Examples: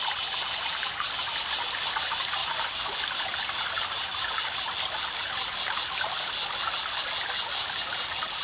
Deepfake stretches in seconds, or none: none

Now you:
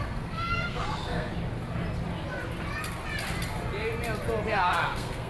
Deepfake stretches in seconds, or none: 0.0-1.3 (codec, SNAC); 4.5-5.3